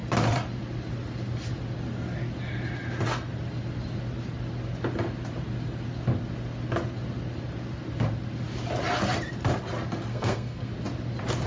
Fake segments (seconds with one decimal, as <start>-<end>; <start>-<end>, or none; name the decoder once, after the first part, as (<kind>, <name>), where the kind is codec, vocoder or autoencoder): 10.1-10.7 (codec, SNAC)